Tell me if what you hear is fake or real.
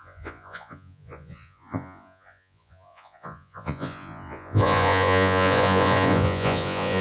fake